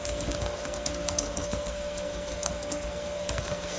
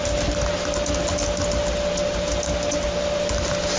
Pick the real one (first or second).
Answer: second